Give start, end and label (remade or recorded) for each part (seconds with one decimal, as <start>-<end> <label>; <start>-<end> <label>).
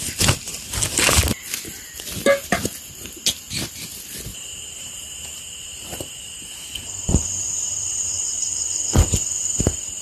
0.0-4.3 recorded; 4.3-7.1 remade; 7.1-10.0 recorded